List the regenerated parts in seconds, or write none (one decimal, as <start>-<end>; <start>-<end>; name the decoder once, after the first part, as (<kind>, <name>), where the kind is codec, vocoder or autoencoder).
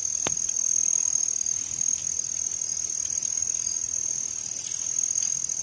none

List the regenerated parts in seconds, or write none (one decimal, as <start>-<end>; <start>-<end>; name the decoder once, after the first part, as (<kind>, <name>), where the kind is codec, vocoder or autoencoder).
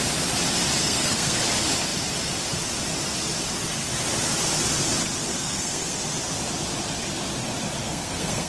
0.8-1.4 (codec, SNAC); 5.3-6.0; 7.8-8.5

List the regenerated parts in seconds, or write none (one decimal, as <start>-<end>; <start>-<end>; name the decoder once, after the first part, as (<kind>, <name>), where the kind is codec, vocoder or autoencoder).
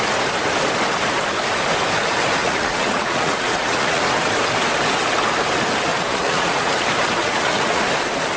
2.4-4.0 (vocoder, Vocos); 5.9-6.7; 7.2-7.8